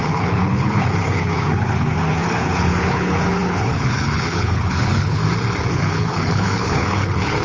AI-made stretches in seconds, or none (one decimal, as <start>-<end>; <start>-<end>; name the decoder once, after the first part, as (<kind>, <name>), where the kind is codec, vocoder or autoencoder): 0.0-5.2 (codec, HILCodec); 5.7-7.4